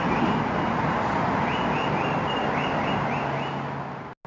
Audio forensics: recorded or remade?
recorded